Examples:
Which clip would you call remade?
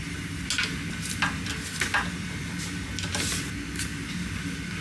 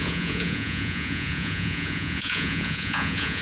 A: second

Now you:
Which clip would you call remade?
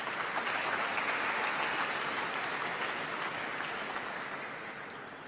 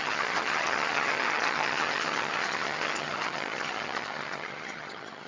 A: second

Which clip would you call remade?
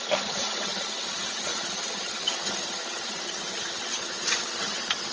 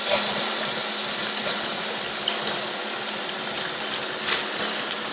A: first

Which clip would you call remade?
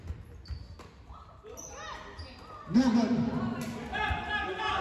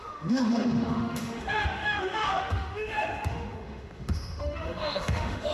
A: second